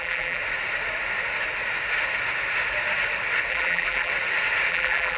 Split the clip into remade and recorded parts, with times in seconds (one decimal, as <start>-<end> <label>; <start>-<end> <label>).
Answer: 0.0-0.4 remade; 0.4-3.5 recorded; 3.5-4.1 remade; 4.1-4.7 recorded; 4.7-5.2 remade